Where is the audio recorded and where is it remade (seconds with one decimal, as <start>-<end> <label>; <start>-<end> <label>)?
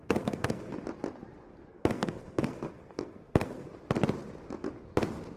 0.0-0.8 remade; 0.8-1.7 recorded; 1.7-3.7 remade; 3.7-5.4 recorded